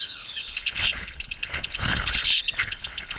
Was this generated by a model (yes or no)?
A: yes